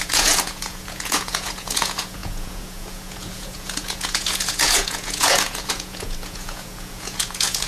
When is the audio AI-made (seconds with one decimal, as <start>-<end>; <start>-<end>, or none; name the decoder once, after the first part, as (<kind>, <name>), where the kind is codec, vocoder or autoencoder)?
0.0-7.7 (vocoder, Vocos)